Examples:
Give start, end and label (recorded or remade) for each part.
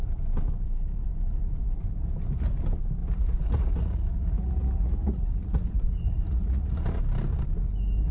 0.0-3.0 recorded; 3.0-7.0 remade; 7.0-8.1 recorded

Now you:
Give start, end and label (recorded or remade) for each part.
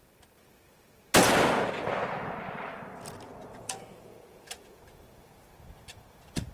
0.0-3.4 recorded; 3.4-4.8 remade; 4.8-6.5 recorded